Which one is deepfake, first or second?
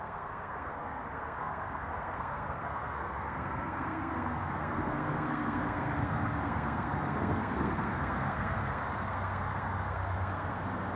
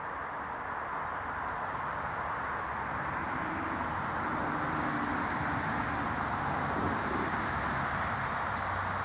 first